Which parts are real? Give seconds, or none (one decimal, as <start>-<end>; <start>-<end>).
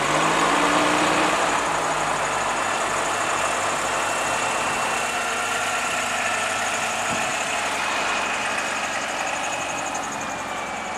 0.0-11.0